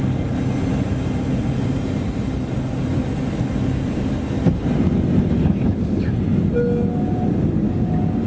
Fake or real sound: real